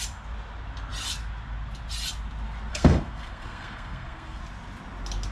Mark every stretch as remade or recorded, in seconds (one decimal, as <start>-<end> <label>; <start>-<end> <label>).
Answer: 0.0-2.7 recorded; 2.7-4.4 remade; 4.4-5.3 recorded